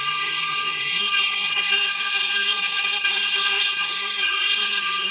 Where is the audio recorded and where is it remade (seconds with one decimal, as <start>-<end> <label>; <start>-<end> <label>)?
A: 0.0-5.1 remade